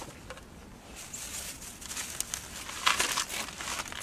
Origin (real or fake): real